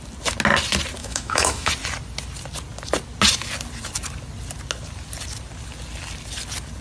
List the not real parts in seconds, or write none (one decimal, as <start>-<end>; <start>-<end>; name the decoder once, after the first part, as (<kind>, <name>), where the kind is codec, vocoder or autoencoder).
1.0-1.7 (autoencoder, DAC-VAE)